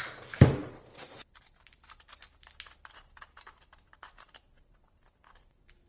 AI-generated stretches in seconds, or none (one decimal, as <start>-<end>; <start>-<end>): none

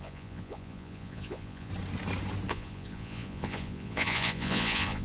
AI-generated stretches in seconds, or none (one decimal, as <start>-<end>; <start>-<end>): 0.0-1.7; 2.5-5.0

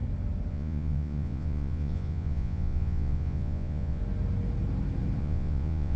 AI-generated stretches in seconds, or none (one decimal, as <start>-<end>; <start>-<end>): 0.5-4.0; 5.2-6.0

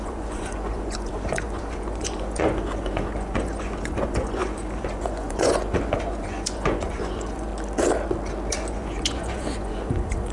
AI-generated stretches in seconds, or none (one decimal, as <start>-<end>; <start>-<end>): 0.0-7.5; 8.7-10.3

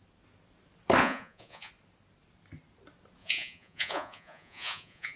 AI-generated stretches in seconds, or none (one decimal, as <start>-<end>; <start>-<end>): 1.0-1.7; 3.2-5.2

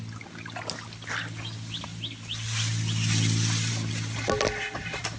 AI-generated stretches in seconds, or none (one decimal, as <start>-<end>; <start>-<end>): none

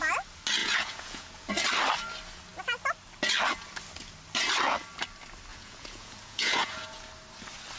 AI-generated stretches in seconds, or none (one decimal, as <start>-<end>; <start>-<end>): 0.6-1.5; 5.5-7.0

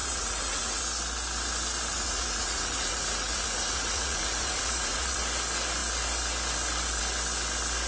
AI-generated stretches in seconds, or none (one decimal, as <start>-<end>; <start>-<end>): 0.0-0.8; 1.9-5.2